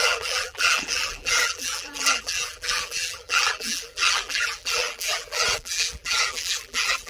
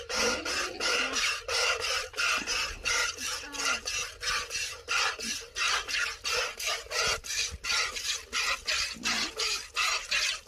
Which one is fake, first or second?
first